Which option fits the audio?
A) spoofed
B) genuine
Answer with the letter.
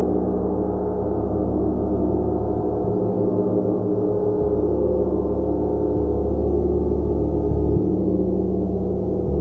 B